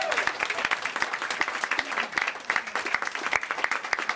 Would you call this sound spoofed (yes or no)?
no